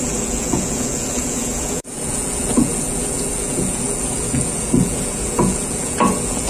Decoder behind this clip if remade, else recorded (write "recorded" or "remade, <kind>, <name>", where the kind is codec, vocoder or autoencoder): remade, vocoder, Vocos